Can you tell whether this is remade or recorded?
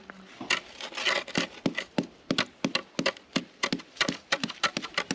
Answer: recorded